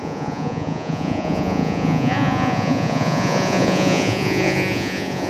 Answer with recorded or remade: remade